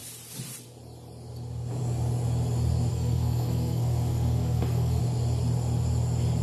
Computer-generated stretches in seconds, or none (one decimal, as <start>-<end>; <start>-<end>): 2.9-5.0